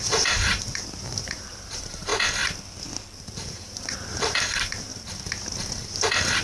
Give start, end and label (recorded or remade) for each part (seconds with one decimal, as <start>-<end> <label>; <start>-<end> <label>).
0.0-2.1 remade; 2.1-3.3 recorded; 3.3-4.9 remade; 4.9-6.4 recorded